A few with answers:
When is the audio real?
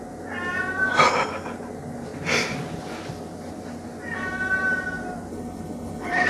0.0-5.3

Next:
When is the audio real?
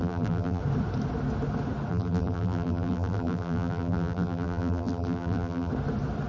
0.6-1.9; 5.7-6.3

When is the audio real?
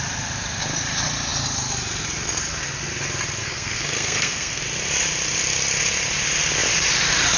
0.0-3.4; 4.6-7.4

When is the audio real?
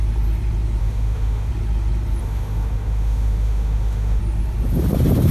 0.0-0.8; 1.5-2.2; 4.2-5.3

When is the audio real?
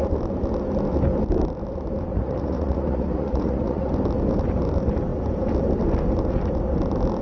0.0-2.1; 3.9-7.2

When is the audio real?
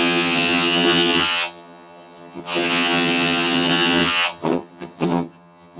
none